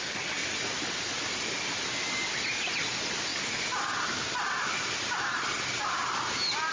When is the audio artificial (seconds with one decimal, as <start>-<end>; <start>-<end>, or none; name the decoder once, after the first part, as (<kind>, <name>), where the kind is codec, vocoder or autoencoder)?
none